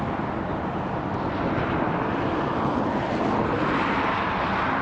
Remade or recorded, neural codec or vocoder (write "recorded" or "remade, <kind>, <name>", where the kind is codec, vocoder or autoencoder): recorded